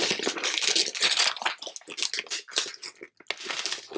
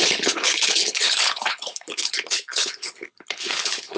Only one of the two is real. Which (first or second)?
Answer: first